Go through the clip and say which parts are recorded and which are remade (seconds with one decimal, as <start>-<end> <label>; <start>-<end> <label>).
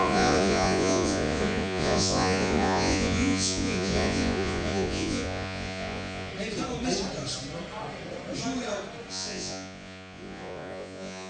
0.0-6.3 remade; 6.3-9.1 recorded; 9.1-11.3 remade